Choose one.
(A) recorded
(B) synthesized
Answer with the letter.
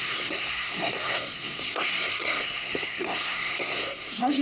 B